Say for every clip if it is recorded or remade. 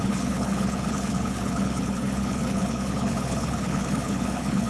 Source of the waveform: remade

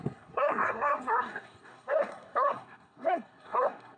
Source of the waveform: remade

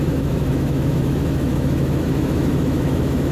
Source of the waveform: remade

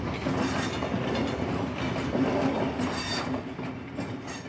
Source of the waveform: recorded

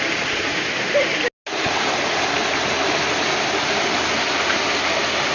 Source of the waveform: recorded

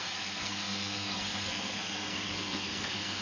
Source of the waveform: remade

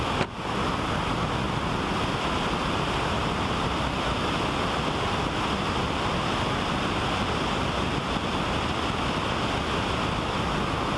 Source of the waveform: recorded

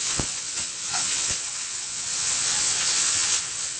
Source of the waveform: remade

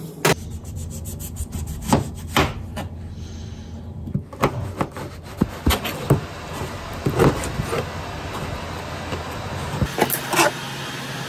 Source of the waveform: recorded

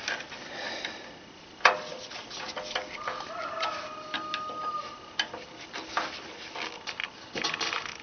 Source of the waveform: recorded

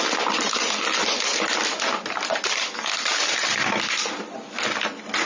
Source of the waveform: recorded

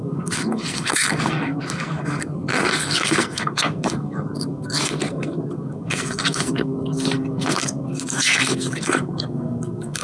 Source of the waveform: remade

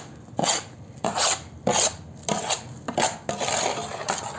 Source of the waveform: recorded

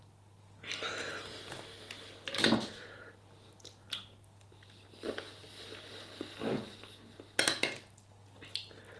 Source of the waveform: recorded